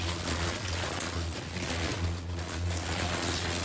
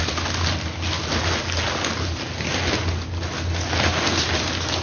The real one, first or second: second